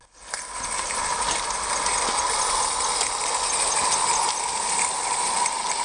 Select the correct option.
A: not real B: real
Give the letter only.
B